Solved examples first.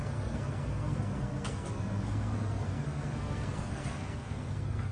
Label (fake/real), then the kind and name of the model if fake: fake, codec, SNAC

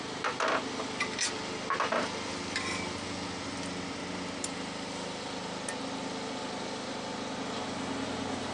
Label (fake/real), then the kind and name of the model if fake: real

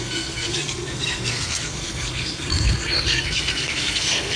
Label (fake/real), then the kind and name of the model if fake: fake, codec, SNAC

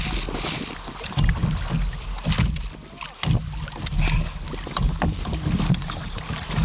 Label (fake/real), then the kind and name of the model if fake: real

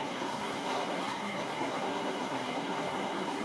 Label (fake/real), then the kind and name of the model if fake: fake, codec, SNAC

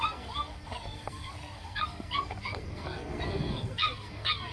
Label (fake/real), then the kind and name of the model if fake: fake, codec, SNAC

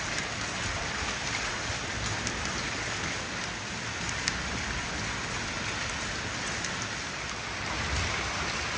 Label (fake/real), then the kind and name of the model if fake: real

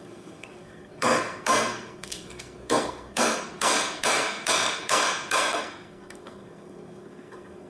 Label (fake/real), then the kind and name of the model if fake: fake, codec, SNAC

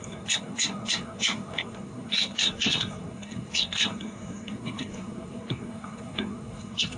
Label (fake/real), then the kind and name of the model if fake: fake, codec, SNAC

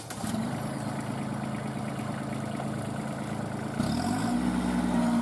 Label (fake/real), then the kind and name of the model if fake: real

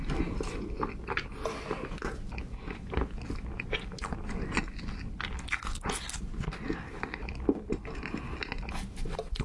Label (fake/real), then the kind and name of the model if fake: real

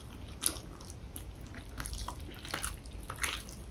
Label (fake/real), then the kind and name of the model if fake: real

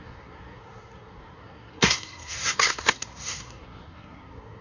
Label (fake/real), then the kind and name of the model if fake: fake, codec, SNAC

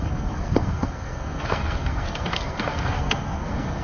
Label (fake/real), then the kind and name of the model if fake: fake, codec, SNAC